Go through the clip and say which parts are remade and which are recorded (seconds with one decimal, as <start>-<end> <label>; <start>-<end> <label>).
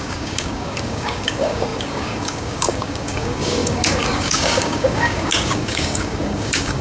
0.0-6.8 remade